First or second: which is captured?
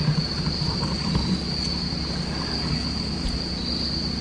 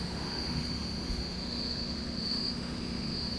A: first